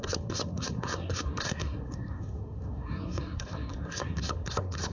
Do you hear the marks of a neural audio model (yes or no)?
yes